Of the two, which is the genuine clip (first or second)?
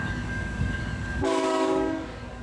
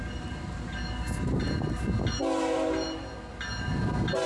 second